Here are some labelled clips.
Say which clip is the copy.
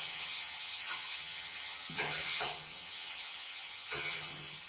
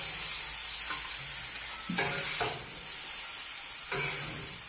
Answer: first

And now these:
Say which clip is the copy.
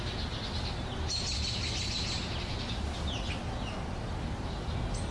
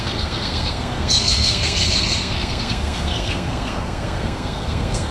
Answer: second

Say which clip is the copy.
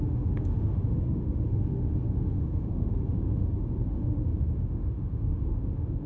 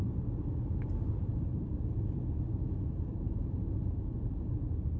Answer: first